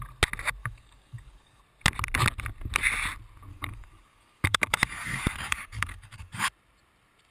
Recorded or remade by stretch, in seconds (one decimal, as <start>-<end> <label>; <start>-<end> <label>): 0.0-0.6 recorded; 0.6-1.6 remade; 1.6-3.5 recorded; 3.5-6.5 remade; 6.5-7.3 recorded